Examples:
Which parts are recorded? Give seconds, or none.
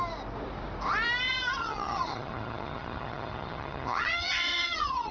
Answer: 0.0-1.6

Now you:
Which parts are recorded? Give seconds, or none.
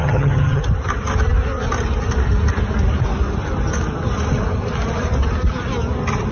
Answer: 0.6-6.3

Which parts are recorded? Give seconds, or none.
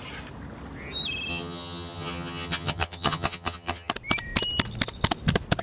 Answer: 0.0-1.3; 3.9-5.6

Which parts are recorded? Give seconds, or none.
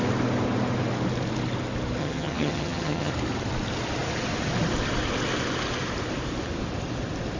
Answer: 0.0-2.0; 3.1-7.4